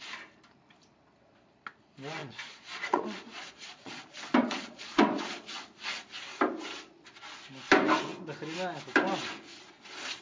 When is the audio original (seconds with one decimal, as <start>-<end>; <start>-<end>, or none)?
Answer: 0.0-2.2; 4.0-4.4; 5.5-10.2

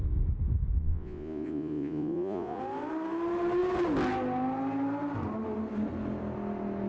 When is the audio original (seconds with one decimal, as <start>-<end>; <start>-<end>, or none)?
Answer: 0.0-0.8; 2.6-6.9

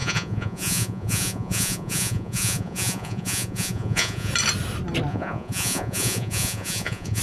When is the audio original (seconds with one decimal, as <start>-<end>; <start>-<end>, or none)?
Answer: 4.3-5.1

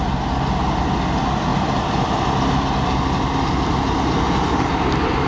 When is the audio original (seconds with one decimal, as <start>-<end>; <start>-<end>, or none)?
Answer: 0.0-5.3